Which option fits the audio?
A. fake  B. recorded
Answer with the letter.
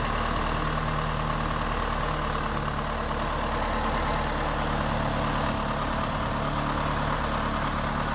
B